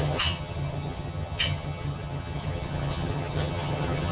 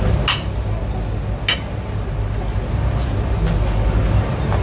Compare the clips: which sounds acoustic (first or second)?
second